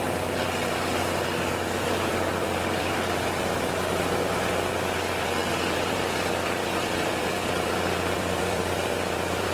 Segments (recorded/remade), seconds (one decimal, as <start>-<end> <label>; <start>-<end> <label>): 0.0-2.1 recorded; 2.1-3.9 remade; 3.9-5.4 recorded; 5.4-9.5 remade